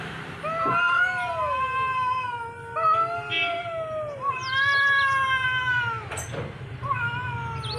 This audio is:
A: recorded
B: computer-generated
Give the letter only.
A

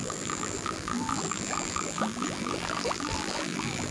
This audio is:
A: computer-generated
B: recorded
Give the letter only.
A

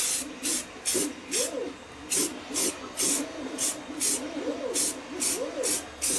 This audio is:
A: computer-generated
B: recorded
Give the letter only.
B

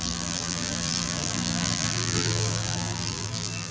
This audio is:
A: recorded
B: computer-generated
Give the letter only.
B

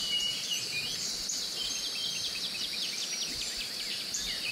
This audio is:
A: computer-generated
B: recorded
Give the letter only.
A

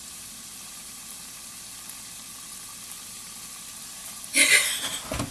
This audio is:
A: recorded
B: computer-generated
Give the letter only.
B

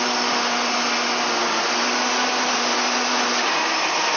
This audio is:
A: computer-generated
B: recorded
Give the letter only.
B